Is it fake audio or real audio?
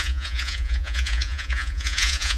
fake